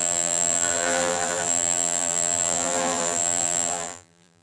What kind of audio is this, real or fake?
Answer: fake